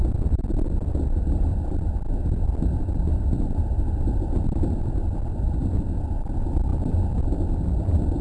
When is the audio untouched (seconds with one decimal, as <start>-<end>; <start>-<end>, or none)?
1.5-2.8; 4.8-5.4; 6.7-7.2